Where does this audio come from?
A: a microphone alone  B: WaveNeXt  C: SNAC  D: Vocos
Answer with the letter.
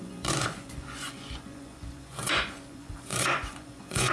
D